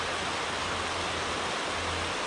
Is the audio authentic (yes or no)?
yes